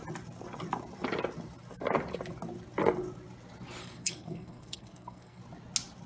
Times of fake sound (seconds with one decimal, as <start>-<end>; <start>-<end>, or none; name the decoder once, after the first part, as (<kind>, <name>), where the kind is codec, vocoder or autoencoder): 3.8-5.4 (codec, SNAC)